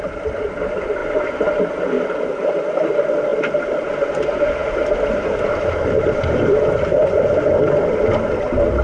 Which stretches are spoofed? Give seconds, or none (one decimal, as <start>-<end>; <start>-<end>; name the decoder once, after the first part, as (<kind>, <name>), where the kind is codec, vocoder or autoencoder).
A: none